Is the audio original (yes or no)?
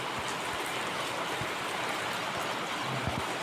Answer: yes